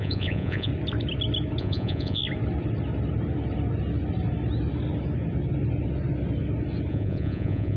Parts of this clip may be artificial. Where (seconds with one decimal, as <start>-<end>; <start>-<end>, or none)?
0.0-0.7; 1.6-2.2; 6.9-7.8